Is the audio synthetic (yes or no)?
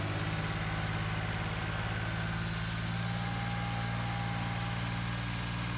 no